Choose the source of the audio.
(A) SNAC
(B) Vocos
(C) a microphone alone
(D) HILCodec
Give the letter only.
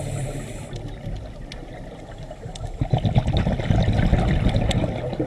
C